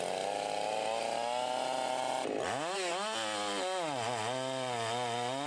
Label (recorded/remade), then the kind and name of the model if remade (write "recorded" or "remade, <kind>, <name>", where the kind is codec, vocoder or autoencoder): recorded